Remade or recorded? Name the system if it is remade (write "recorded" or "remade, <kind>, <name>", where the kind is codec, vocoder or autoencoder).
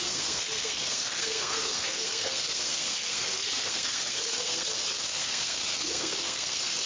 remade, codec, SNAC